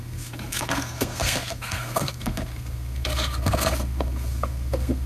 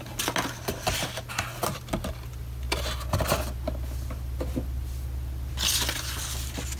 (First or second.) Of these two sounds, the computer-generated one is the first